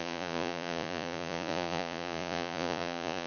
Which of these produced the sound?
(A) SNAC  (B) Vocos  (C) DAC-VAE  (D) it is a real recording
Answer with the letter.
B